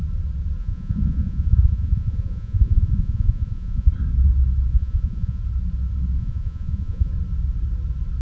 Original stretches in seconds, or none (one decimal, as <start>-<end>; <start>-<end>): 0.0-0.6; 3.9-4.7; 5.4-6.2; 7.1-8.2